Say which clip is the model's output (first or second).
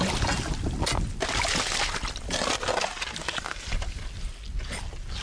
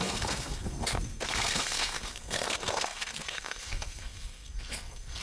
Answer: second